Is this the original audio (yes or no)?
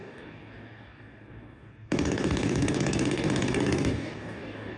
no